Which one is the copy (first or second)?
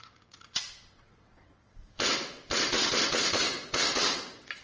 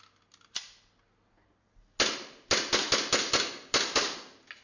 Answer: first